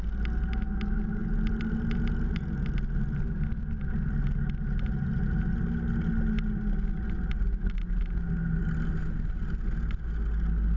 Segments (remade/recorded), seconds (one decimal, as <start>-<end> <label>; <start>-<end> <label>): 0.0-10.8 recorded